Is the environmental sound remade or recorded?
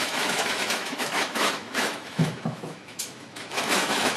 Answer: remade